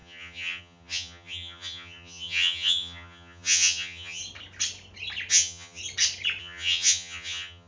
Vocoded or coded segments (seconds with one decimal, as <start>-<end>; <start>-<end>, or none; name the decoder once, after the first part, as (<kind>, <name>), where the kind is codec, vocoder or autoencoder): 0.0-4.2 (vocoder, HiFi-GAN); 5.3-5.8; 6.4-7.7